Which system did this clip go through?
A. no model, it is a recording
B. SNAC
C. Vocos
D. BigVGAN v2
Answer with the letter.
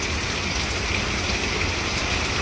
A